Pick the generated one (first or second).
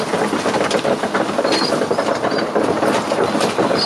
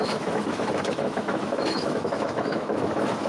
second